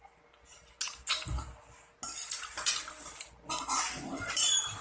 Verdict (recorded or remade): recorded